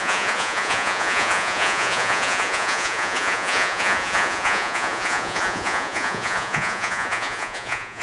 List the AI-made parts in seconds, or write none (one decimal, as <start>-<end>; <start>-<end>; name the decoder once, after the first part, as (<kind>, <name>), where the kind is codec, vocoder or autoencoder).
0.0-8.0 (vocoder, Vocos)